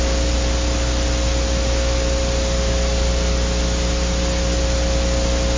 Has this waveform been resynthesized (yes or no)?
no